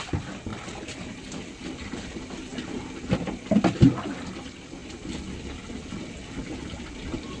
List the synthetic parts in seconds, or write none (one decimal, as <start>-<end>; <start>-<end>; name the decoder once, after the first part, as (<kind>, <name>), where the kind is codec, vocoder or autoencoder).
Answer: none